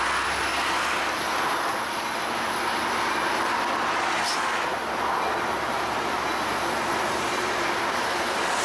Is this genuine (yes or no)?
yes